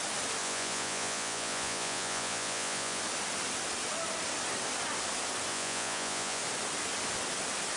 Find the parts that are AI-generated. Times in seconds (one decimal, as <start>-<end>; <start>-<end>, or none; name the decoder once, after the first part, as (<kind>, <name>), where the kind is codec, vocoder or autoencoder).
0.4-3.0 (vocoder, Vocos); 5.5-6.4